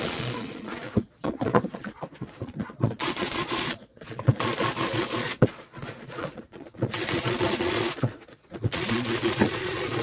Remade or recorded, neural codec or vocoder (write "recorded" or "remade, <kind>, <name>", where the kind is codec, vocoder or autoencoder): remade, vocoder, Vocos